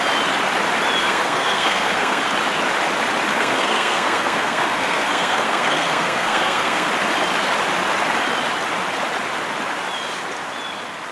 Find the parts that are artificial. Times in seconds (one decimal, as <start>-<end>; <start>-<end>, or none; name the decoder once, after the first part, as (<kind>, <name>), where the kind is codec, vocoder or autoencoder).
1.0-2.2 (codec, SNAC); 3.3-6.9